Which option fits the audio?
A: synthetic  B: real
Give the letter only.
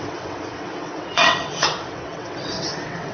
A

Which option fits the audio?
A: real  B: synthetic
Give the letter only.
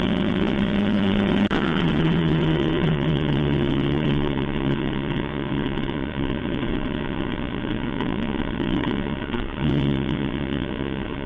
B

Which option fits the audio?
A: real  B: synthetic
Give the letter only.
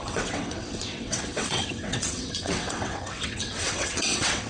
B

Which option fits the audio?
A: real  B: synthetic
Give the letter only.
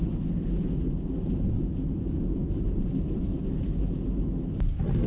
A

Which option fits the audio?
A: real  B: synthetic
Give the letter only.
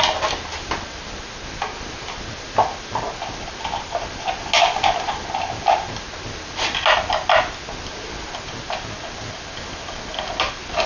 A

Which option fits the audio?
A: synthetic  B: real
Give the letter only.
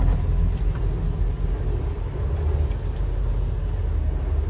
B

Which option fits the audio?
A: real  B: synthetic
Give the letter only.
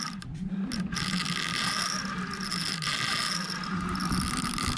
A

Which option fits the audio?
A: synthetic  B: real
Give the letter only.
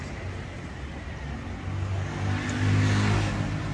B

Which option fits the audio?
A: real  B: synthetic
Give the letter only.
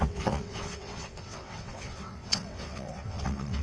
B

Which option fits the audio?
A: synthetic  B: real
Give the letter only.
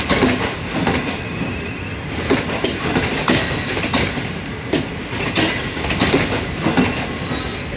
B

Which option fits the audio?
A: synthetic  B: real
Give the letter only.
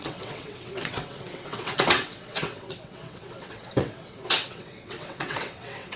A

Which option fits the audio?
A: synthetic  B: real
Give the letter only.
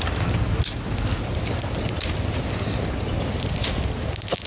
B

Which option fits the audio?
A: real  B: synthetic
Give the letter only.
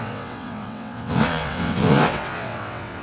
B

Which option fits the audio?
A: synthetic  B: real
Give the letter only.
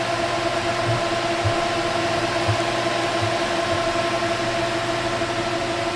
B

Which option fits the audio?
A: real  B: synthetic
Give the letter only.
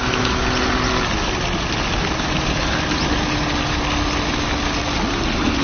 A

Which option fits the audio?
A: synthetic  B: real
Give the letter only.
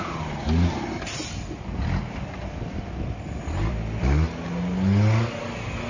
B